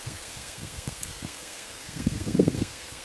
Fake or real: fake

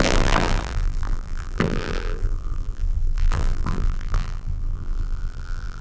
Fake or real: fake